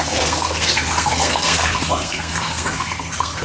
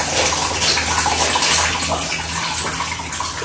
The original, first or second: second